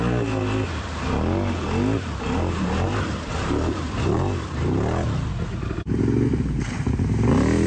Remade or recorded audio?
recorded